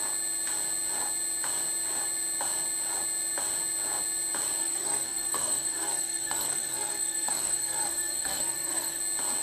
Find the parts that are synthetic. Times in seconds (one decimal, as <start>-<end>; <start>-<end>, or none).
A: 4.6-9.0